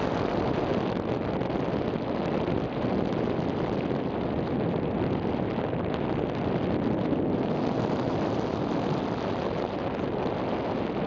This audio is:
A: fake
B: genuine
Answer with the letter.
B